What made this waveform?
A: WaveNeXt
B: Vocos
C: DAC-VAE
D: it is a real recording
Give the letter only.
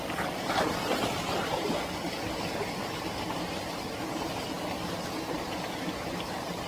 D